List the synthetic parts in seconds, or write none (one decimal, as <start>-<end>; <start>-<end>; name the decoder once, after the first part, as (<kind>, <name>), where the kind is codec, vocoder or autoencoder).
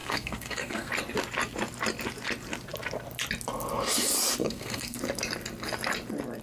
0.0-0.9 (codec, SNAC); 4.4-5.0